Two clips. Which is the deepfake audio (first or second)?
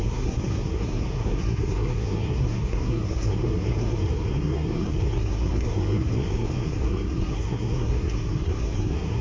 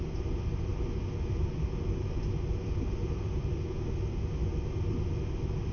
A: first